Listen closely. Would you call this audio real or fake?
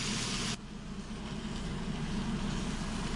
real